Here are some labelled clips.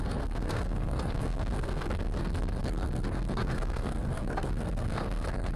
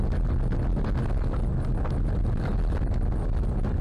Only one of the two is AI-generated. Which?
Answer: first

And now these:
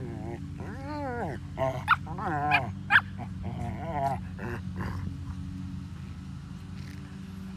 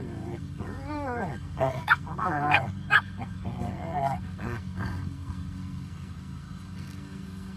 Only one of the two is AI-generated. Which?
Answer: second